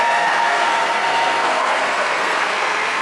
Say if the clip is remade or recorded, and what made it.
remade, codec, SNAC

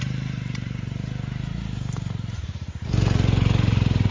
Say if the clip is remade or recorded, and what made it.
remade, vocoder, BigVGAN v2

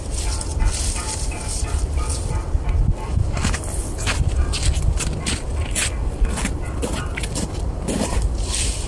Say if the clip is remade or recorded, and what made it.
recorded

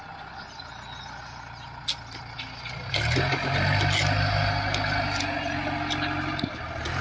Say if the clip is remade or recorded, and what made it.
recorded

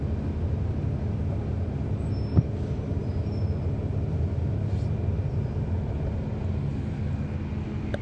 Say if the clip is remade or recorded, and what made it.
recorded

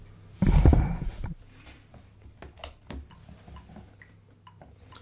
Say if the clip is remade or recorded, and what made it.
recorded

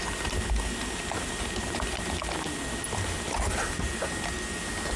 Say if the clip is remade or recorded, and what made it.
recorded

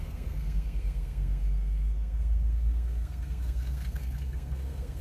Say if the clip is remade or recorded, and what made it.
remade, codec, SNAC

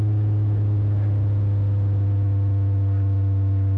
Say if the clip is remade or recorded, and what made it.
recorded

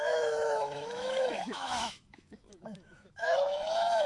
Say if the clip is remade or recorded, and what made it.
remade, autoencoder, DAC-VAE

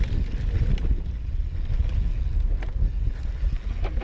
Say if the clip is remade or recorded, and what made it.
recorded